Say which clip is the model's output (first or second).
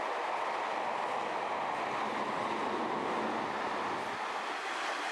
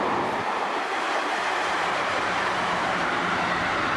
second